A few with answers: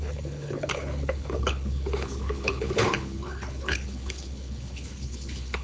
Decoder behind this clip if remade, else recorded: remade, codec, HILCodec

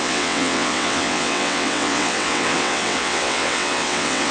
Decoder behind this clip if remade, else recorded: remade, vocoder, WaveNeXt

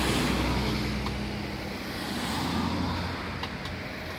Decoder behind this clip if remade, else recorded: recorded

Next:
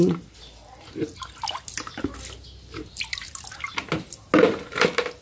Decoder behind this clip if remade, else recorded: recorded